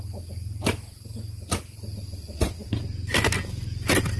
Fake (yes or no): no